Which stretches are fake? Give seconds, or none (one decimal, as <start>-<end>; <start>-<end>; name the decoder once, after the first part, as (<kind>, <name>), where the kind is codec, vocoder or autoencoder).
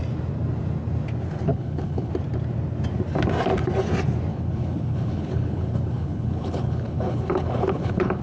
1.5-2.1 (codec, HILCodec); 4.3-8.2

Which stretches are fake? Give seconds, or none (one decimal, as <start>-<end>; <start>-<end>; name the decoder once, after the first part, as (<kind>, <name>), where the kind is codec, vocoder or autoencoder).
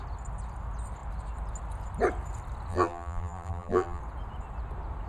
2.7-4.0 (vocoder, BigVGAN v2)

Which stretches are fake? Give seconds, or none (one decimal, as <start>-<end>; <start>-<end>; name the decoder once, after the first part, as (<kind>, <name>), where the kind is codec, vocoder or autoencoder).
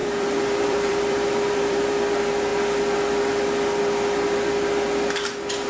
0.0-1.9 (vocoder, BigVGAN v2)